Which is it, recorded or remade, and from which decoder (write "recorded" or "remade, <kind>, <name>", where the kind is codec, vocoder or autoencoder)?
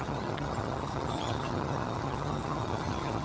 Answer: remade, vocoder, HiFi-GAN